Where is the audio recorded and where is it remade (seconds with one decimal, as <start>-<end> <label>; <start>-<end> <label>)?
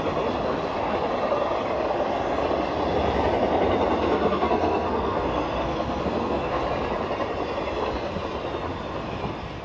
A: 0.0-4.0 recorded; 4.0-6.6 remade; 6.6-9.6 recorded